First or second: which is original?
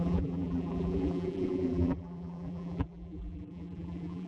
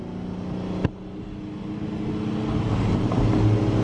second